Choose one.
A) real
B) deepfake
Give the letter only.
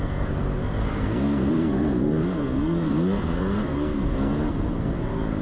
B